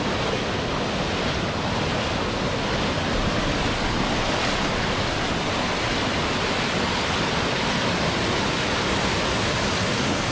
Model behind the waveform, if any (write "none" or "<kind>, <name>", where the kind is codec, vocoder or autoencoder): none